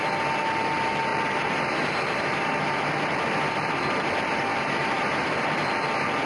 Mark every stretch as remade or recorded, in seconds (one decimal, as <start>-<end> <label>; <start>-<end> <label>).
0.0-1.1 recorded; 1.1-2.9 remade; 2.9-4.5 recorded; 4.5-5.5 remade; 5.5-6.3 recorded